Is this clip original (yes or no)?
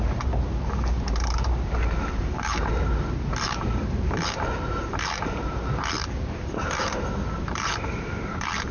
no